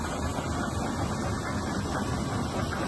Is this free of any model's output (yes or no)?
yes